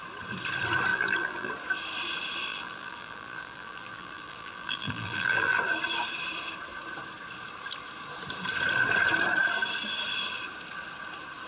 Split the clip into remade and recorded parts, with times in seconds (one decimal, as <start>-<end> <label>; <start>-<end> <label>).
0.0-0.9 recorded; 0.9-1.5 remade; 1.5-2.5 recorded; 2.5-5.6 remade; 5.6-11.5 recorded